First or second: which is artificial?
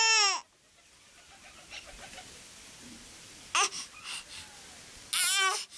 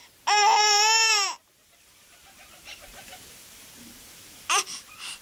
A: second